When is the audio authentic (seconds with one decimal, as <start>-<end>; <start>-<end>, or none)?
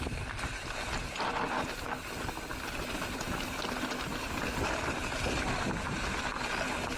0.0-7.0